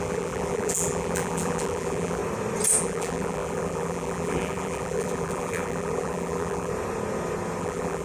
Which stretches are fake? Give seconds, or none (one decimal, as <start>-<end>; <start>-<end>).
0.0-2.2; 2.8-6.7; 7.6-8.0